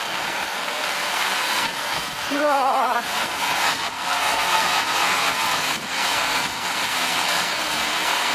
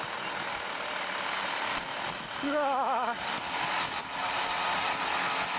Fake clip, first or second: first